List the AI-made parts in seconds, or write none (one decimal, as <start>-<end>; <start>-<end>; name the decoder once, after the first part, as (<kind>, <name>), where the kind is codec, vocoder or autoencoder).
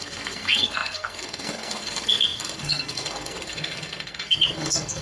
0.0-5.0 (codec, SNAC)